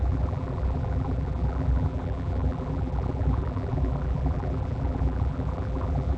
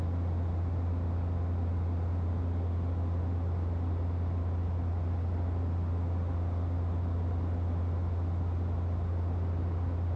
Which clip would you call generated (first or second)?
first